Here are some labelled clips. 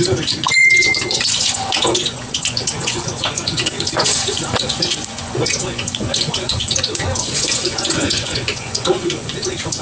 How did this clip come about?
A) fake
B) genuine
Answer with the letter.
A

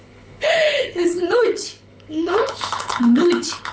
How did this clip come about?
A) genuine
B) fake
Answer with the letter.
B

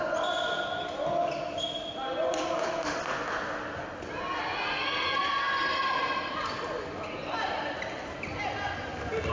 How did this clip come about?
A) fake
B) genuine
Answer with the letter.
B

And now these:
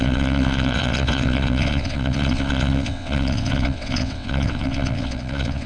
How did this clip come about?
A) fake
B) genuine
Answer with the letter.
A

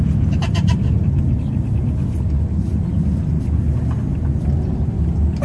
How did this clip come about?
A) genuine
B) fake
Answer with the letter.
A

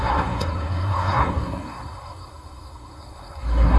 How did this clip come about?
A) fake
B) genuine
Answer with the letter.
A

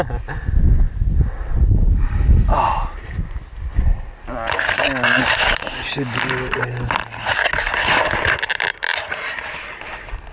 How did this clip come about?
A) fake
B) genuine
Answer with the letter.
B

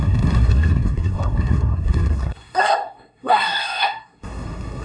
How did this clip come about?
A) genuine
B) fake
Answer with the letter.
B